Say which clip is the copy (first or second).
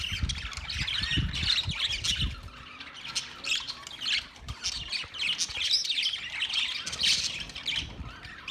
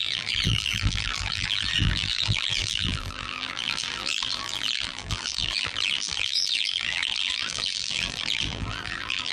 second